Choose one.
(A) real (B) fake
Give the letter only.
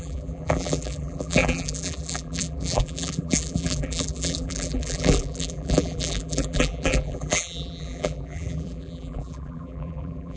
B